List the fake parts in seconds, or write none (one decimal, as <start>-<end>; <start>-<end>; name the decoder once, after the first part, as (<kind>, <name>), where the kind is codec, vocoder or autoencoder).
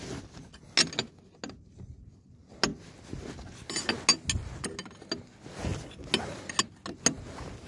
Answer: none